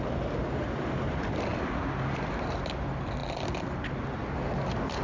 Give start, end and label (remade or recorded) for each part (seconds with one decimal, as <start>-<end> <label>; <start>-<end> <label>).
0.0-5.0 recorded